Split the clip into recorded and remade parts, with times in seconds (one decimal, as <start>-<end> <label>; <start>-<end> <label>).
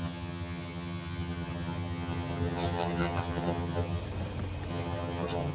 0.0-4.0 remade; 4.0-4.7 recorded; 4.7-5.5 remade